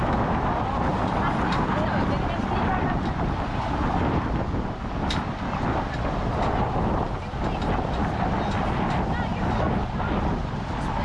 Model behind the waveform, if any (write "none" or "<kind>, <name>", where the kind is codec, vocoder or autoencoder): none